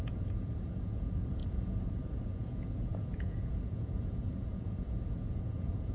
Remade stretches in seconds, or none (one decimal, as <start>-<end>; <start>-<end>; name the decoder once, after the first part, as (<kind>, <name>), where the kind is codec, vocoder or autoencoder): 0.0-5.9 (vocoder, Vocos)